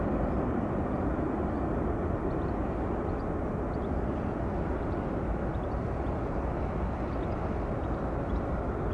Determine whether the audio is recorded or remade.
recorded